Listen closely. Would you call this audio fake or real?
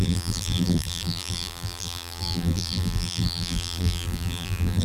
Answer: fake